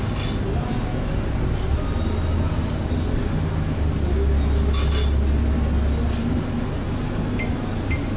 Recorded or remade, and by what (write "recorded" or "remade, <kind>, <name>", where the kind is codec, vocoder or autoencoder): recorded